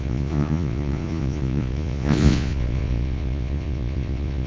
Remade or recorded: remade